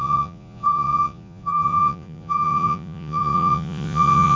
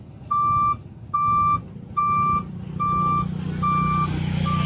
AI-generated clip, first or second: first